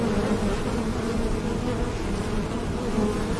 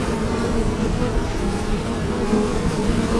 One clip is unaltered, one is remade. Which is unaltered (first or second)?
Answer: first